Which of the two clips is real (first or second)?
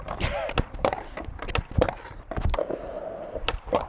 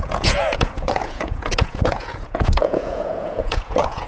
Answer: first